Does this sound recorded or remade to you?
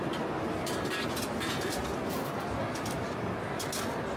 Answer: recorded